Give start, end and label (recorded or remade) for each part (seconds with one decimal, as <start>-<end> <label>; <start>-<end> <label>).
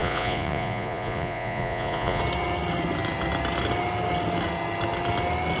0.0-2.2 remade; 2.2-5.6 recorded